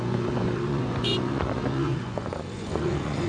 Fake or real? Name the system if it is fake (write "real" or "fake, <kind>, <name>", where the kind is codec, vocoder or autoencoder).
fake, vocoder, Vocos